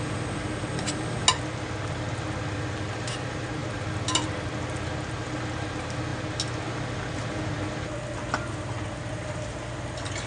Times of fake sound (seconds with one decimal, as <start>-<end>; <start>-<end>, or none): none